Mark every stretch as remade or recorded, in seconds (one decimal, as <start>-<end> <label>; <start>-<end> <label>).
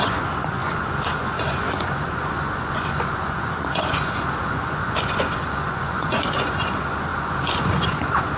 0.0-8.4 remade